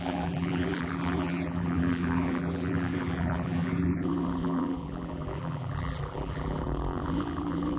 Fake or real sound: fake